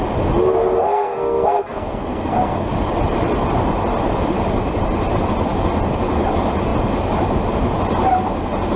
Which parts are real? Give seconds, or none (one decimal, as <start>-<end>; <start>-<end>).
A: 0.0-0.8; 2.7-8.8